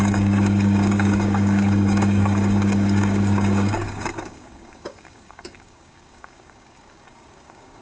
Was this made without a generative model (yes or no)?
no